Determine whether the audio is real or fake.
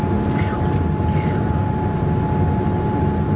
real